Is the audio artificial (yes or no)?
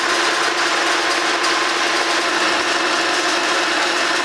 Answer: no